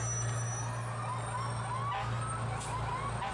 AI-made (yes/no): no